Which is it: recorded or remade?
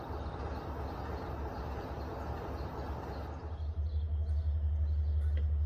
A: recorded